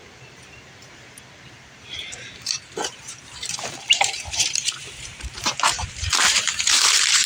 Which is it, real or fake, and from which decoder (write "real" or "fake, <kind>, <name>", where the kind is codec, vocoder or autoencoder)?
fake, vocoder, BigVGAN v2